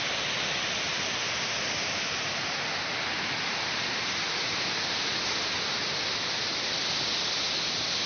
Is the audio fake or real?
real